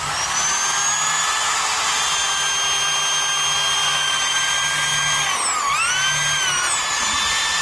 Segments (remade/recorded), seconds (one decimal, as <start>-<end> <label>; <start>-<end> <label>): 0.0-7.6 recorded